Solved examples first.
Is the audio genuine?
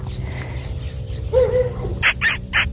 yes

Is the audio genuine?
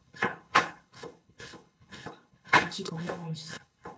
no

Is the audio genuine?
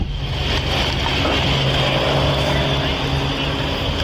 yes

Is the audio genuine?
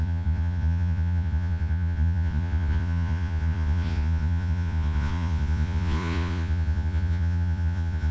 no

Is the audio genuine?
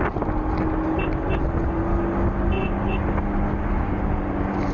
yes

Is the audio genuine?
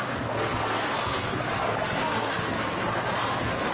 no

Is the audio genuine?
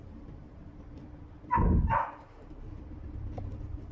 no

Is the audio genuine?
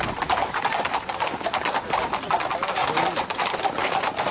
yes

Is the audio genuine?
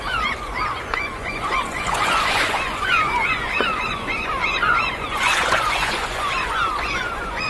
no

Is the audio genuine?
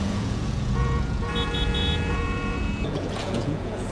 no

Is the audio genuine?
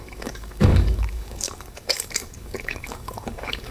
no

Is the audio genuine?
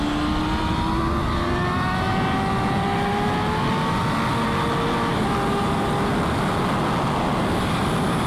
yes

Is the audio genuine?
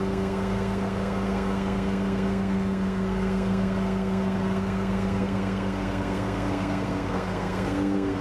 no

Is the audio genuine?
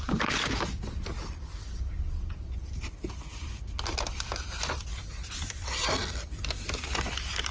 yes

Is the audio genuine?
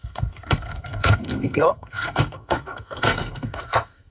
no